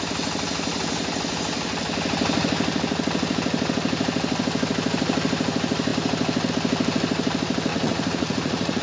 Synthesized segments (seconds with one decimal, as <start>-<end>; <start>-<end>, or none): 7.7-8.8